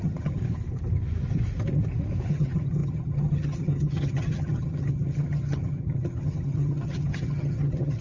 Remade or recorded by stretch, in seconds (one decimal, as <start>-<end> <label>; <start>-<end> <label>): 0.0-0.4 remade; 0.4-2.3 recorded; 2.3-8.0 remade